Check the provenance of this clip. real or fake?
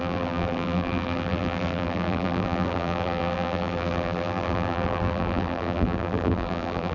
fake